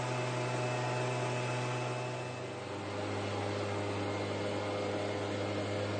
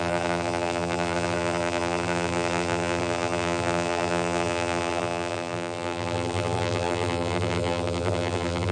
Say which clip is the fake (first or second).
second